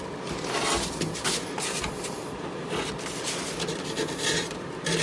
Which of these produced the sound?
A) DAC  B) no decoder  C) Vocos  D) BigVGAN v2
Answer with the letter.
D